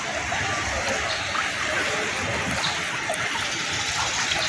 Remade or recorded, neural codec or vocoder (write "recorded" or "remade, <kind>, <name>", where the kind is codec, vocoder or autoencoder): recorded